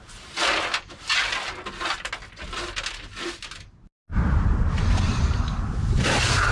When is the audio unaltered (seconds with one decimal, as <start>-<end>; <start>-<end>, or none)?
0.0-4.1